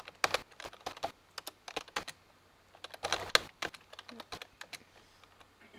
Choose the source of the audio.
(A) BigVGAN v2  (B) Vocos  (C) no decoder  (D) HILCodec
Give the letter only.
C